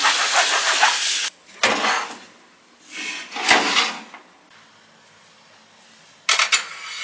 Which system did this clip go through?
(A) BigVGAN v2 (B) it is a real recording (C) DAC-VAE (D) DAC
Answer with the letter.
B